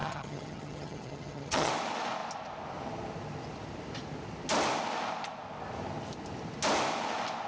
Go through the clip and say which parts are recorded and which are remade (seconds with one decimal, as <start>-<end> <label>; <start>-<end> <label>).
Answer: 0.0-1.7 remade; 1.7-7.5 recorded